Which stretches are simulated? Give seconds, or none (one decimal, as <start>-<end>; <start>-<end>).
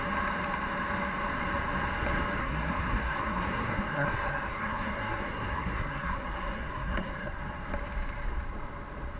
2.4-7.4